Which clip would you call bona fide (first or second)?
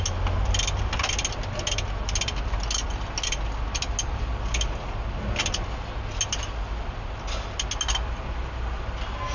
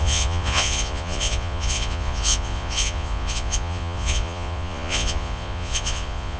first